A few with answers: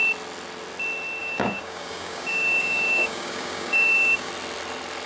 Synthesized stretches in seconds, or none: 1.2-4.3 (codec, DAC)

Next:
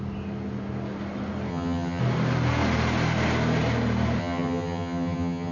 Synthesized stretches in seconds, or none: 1.5-2.0 (vocoder, HiFi-GAN); 4.2-5.5

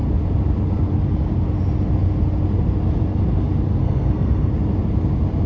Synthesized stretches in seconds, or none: 3.8-4.5 (codec, SNAC)